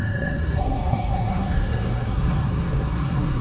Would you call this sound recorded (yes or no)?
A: no